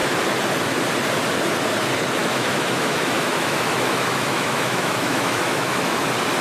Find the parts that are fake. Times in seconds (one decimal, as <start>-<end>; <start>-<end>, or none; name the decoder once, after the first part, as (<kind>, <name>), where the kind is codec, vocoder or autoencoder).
2.2-6.0 (autoencoder, DAC-VAE)